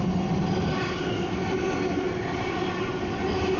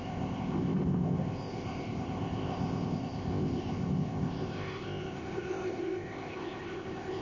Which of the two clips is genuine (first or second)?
first